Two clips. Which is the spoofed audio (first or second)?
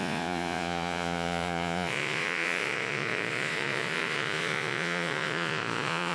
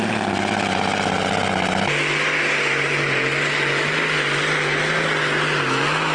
first